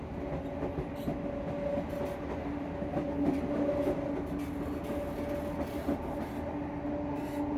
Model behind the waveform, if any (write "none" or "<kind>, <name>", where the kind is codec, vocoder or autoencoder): none